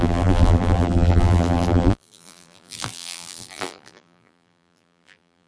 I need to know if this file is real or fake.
fake